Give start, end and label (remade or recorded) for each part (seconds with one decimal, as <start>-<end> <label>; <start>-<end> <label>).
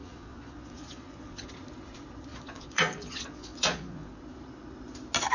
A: 0.0-1.5 remade; 1.5-2.3 recorded; 2.3-4.2 remade; 4.2-5.3 recorded